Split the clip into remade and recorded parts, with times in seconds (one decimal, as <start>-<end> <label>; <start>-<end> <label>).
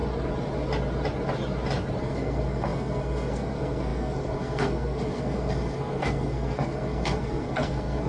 0.0-2.0 recorded; 2.0-8.1 remade